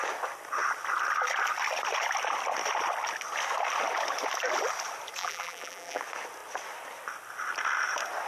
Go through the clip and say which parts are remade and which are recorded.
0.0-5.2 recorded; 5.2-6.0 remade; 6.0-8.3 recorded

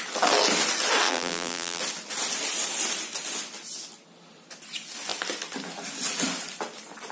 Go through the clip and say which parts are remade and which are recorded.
0.0-1.1 recorded; 1.1-1.8 remade; 1.8-7.1 recorded

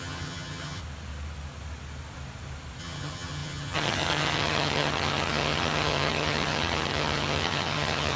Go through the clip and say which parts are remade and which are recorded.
0.0-0.8 remade; 0.8-2.8 recorded; 2.8-8.2 remade